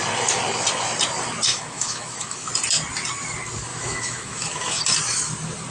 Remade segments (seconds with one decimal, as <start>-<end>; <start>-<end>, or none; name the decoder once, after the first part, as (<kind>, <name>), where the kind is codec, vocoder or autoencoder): 1.5-2.5 (autoencoder, DAC-VAE); 3.7-4.8